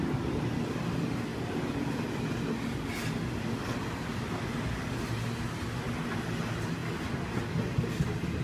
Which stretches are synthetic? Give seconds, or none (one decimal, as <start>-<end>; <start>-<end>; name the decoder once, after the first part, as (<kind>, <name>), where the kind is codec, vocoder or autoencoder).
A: none